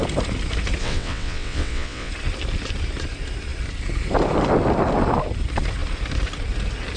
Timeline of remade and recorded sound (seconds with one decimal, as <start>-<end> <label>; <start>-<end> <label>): 0.0-0.8 recorded; 0.8-2.1 remade; 2.1-7.0 recorded